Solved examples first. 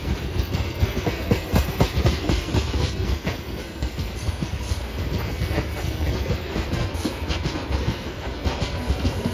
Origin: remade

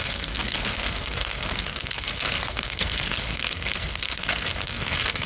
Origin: remade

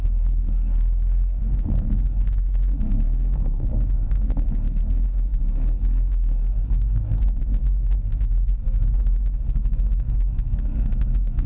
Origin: remade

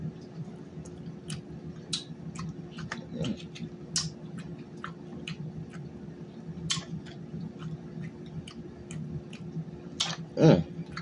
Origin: recorded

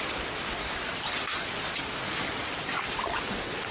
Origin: recorded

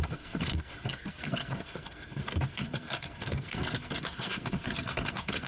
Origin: remade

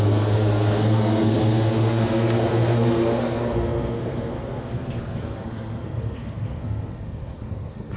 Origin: remade